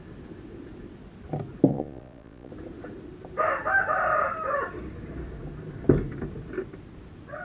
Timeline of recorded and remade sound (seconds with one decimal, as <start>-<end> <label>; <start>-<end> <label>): 0.0-1.7 recorded; 1.7-2.5 remade; 2.5-7.4 recorded